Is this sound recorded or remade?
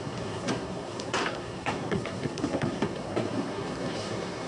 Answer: remade